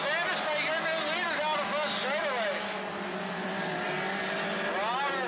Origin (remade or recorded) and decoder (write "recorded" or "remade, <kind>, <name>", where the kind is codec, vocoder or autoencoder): recorded